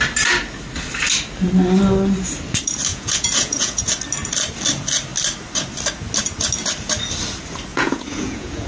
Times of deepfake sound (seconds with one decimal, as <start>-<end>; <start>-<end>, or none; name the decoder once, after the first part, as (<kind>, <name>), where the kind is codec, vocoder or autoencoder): 2.9-3.9 (vocoder, Vocos); 7.7-8.7